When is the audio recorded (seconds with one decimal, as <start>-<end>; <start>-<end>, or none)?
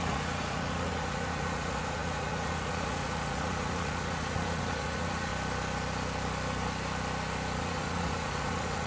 5.3-7.6